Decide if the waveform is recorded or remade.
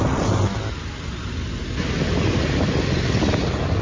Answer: recorded